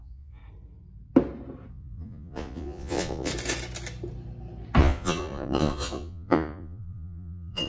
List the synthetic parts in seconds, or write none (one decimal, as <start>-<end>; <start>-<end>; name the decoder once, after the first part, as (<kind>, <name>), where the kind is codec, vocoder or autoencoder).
0.0-0.4 (vocoder, Vocos); 1.7-3.3; 4.8-7.7